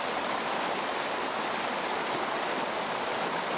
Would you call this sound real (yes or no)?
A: yes